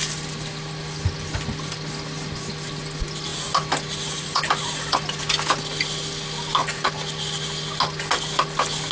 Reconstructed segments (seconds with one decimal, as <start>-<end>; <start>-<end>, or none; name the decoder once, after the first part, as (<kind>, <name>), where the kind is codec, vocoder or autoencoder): none